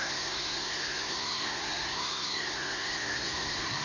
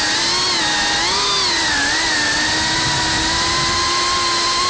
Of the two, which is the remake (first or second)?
first